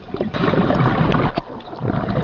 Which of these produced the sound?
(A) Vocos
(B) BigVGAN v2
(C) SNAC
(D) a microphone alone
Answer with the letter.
D